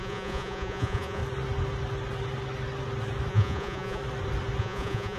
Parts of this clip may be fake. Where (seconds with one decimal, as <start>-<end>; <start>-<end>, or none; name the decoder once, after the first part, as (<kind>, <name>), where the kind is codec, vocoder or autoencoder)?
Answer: 0.0-1.2 (vocoder, Vocos); 3.3-4.0; 4.6-5.2